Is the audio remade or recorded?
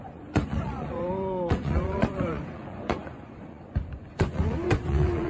remade